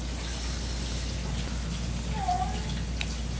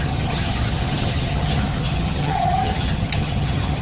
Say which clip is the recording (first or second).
first